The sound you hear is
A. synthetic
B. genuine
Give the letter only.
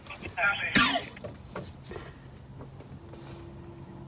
B